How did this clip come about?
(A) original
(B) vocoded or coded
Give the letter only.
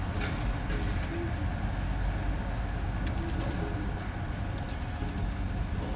A